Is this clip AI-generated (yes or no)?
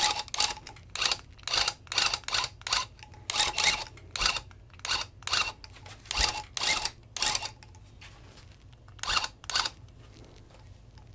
no